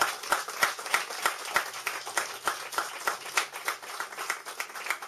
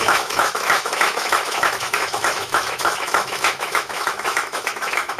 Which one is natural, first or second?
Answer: first